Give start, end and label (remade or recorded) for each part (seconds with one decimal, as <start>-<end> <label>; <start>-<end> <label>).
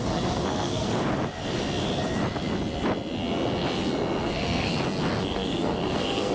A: 0.0-0.9 remade; 0.9-4.2 recorded; 4.2-4.7 remade; 4.7-5.2 recorded; 5.2-6.3 remade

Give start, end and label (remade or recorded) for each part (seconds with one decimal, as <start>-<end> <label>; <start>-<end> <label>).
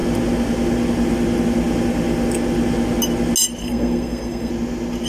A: 0.0-3.6 recorded; 3.6-4.5 remade; 4.5-5.1 recorded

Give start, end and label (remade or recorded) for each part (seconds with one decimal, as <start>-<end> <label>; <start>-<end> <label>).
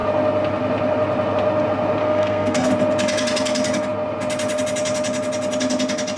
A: 0.0-2.0 recorded; 2.0-2.7 remade; 2.7-6.2 recorded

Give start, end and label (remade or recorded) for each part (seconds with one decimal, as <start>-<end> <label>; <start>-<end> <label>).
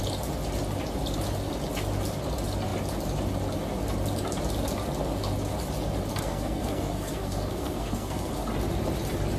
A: 0.0-6.1 recorded; 6.1-8.3 remade; 8.3-9.4 recorded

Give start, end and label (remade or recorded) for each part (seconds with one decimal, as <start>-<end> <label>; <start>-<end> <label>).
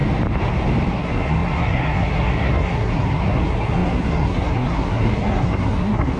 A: 0.0-0.9 recorded; 0.9-6.2 remade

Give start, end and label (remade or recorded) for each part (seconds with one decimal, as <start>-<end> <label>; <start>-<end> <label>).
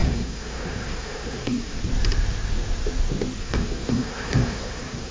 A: 0.0-1.8 remade; 1.8-3.4 recorded; 3.4-5.1 remade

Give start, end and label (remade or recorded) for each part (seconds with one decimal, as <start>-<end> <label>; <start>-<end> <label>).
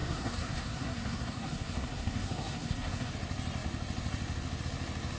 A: 0.0-3.1 remade; 3.1-5.2 recorded